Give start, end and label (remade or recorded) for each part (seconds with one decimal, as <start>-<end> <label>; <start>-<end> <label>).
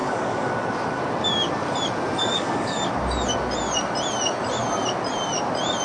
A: 0.0-0.5 remade; 0.5-2.2 recorded; 2.2-2.8 remade; 2.8-5.8 recorded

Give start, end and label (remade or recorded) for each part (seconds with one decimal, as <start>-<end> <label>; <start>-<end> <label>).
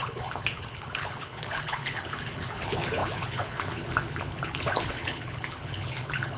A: 0.0-6.4 remade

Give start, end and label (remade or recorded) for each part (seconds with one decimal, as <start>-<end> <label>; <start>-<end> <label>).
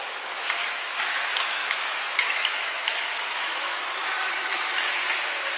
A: 0.0-5.0 remade; 5.0-5.6 recorded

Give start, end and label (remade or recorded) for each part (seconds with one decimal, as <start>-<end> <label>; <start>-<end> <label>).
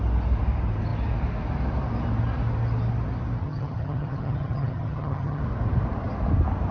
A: 0.0-3.4 recorded; 3.4-5.4 remade; 5.4-6.7 recorded